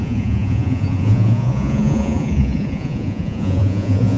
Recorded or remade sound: remade